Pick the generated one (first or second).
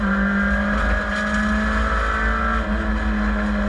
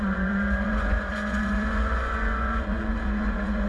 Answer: second